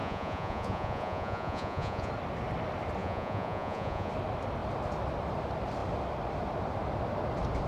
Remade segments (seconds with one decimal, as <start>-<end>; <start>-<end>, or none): 0.0-2.1; 3.0-4.1